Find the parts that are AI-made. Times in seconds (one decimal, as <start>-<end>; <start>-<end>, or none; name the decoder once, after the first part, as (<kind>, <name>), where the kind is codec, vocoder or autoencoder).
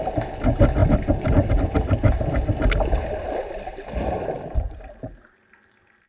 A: 0.0-6.1 (vocoder, BigVGAN v2)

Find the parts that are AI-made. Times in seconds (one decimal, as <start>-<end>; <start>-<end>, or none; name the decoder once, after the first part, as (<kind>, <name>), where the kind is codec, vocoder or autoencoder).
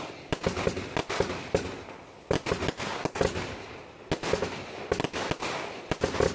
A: 0.0-2.5 (vocoder, BigVGAN v2); 5.8-6.3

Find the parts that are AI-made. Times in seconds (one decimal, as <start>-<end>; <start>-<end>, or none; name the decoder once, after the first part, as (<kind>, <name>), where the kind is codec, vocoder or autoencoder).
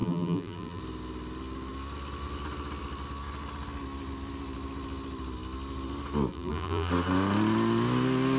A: 0.0-0.8 (vocoder, BigVGAN v2); 6.3-6.9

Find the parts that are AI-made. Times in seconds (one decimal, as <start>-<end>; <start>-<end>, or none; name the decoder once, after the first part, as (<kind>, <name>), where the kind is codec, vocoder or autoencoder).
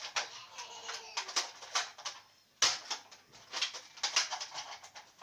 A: none